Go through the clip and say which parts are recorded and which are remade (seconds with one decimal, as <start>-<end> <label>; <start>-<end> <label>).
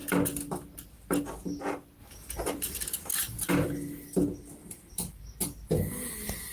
0.0-2.0 recorded; 2.0-3.5 remade; 3.5-4.6 recorded; 4.6-5.3 remade; 5.3-6.5 recorded